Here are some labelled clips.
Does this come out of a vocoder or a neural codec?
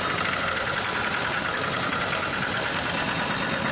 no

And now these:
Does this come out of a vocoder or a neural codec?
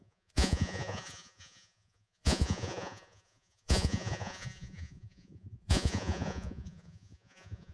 yes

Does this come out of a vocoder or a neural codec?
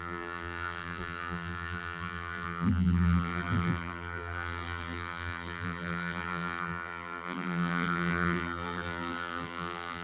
yes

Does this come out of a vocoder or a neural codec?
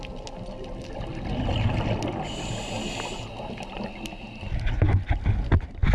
no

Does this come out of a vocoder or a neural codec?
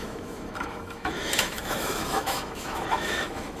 yes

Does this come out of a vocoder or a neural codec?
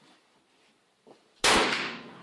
no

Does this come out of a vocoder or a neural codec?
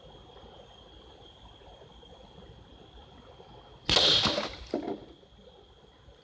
no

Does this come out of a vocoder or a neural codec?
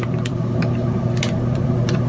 yes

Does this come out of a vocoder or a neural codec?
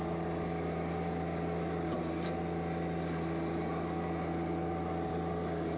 no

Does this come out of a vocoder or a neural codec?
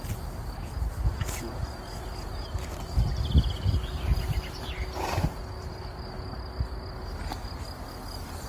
no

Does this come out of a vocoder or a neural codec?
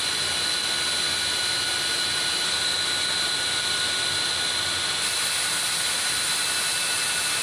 no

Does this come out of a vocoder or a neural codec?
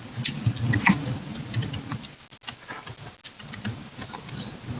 no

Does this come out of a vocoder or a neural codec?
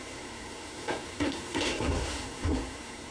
yes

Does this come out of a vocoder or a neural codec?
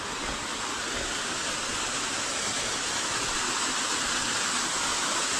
no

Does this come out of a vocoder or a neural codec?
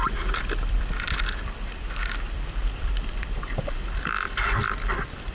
yes